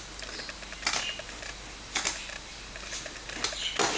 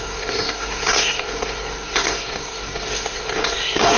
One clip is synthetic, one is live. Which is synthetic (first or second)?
second